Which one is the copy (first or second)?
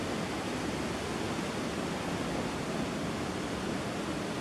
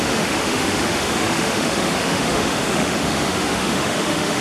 second